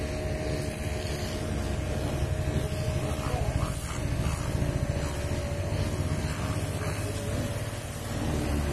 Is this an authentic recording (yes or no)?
yes